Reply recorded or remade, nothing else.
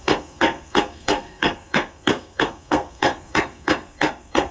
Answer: remade